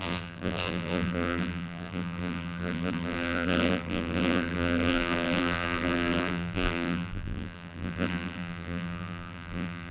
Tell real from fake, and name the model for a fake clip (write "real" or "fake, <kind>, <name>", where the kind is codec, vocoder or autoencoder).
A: fake, vocoder, BigVGAN v2